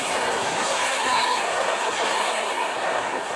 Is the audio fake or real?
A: fake